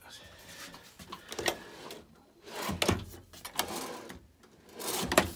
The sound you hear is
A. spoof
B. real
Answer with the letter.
B